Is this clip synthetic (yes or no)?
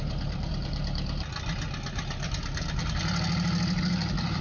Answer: yes